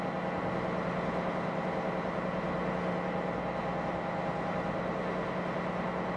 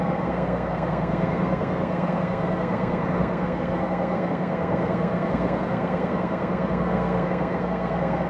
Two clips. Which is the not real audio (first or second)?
second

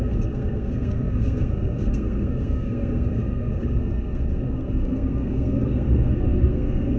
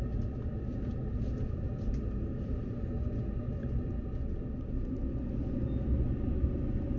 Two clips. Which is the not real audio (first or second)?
first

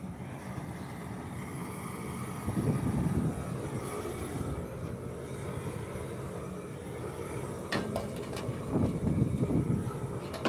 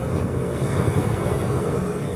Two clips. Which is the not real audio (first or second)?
second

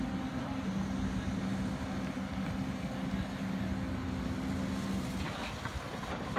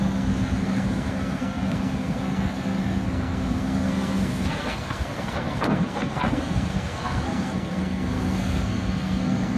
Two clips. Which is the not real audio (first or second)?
second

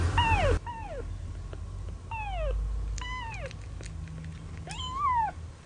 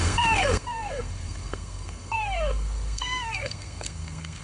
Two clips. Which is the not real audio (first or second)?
second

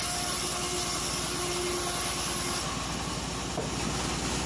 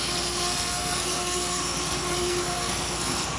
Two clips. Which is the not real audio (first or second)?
second